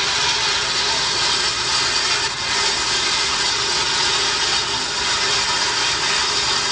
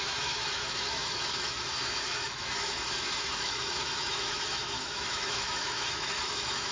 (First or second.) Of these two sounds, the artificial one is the second